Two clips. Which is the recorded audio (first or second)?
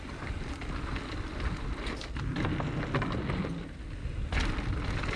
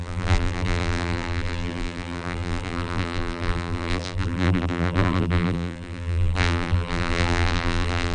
first